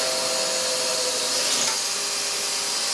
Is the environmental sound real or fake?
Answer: real